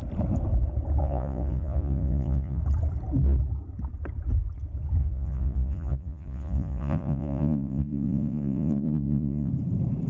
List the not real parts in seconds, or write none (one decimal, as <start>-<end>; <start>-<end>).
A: 1.0-2.6; 5.0-9.5